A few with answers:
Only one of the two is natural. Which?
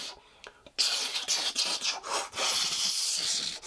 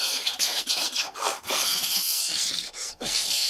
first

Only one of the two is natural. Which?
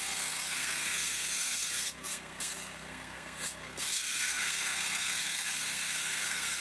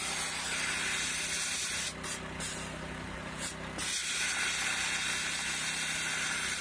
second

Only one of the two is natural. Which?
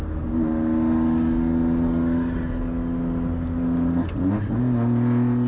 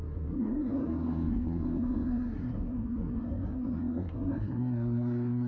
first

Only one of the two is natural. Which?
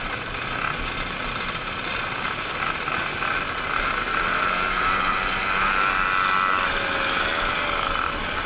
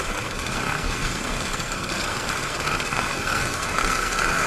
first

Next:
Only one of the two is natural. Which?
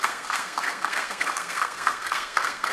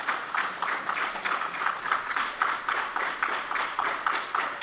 second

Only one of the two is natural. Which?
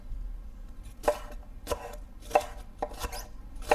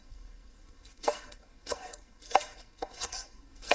first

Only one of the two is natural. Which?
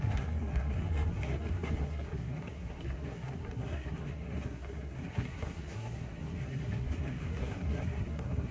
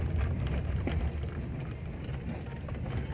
second